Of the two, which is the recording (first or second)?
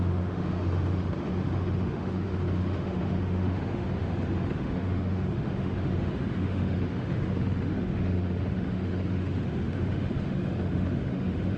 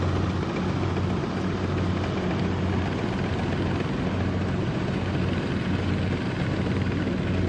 second